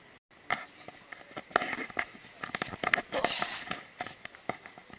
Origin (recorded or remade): recorded